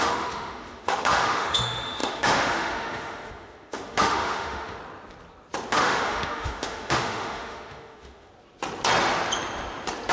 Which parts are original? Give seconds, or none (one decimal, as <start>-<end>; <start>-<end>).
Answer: 4.8-5.7; 8.3-10.1